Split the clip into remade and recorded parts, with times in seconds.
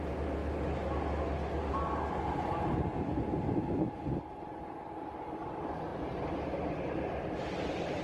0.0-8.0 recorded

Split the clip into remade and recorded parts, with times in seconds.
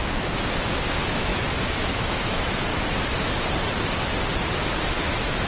0.0-0.7 recorded; 0.7-2.7 remade; 2.7-4.9 recorded; 4.9-5.5 remade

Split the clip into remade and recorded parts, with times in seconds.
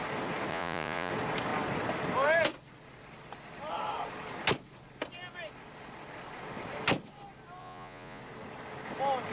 0.0-0.5 recorded; 0.5-1.1 remade; 1.1-7.6 recorded; 7.6-8.2 remade; 8.2-9.3 recorded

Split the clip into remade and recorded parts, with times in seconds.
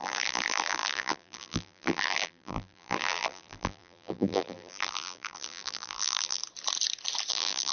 0.0-6.4 remade; 6.4-7.3 recorded; 7.3-7.7 remade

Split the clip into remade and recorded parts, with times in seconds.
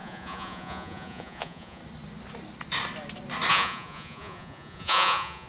0.0-1.8 remade; 1.8-3.5 recorded; 3.5-5.5 remade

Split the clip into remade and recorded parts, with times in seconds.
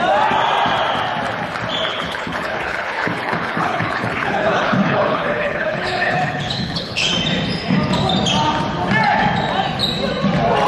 0.0-1.9 recorded; 1.9-7.1 remade; 7.1-10.7 recorded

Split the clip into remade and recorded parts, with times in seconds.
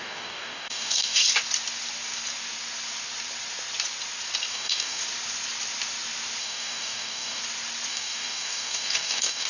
0.0-1.2 remade; 1.2-4.5 recorded; 4.5-5.0 remade; 5.0-6.4 recorded; 6.4-7.4 remade; 7.4-7.9 recorded; 7.9-9.5 remade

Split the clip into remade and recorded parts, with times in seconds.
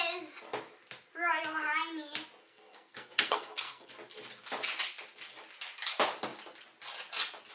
0.0-2.4 recorded; 2.4-3.9 remade; 3.9-7.5 recorded